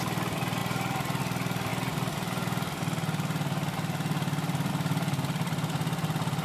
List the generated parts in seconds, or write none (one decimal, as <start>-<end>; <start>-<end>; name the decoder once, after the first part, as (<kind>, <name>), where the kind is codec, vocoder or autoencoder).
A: 0.0-6.4 (vocoder, BigVGAN v2)